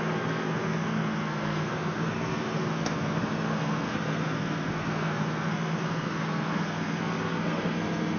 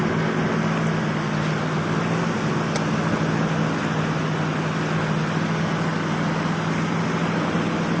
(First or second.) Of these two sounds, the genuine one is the second